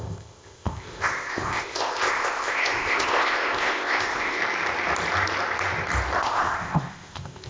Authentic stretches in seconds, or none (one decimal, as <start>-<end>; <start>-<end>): 4.4-6.2

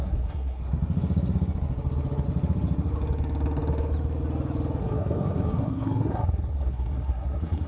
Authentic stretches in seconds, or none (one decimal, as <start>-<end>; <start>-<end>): 0.6-4.8

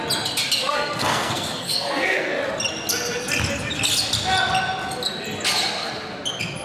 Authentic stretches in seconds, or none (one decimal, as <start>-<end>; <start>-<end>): 0.0-0.6; 2.3-6.6

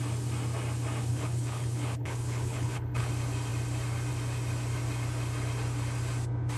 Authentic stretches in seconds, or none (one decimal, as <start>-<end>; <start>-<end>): 0.0-1.1; 3.1-6.6

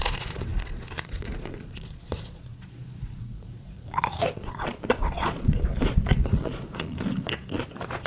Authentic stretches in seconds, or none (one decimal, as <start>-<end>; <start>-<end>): none

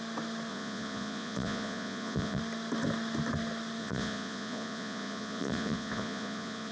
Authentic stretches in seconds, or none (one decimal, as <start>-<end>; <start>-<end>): 0.0-0.5; 2.4-3.8

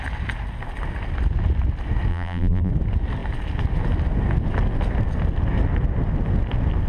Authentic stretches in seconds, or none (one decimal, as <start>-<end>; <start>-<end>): 0.0-2.1; 2.7-6.9

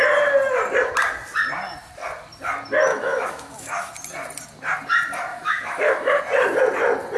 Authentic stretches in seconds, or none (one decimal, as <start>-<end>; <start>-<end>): 0.0-2.9; 3.9-5.3; 6.2-7.2